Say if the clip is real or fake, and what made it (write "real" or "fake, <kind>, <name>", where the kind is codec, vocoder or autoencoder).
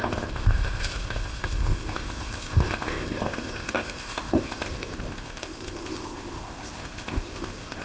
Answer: fake, codec, ZipCodec